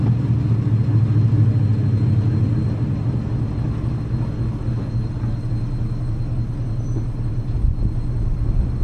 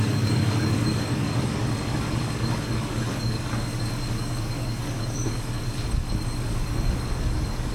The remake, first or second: second